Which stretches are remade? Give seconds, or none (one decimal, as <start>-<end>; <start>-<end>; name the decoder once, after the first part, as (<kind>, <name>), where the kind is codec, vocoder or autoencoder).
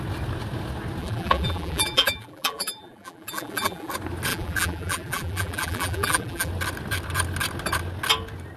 1.0-3.9 (vocoder, BigVGAN v2); 4.3-6.5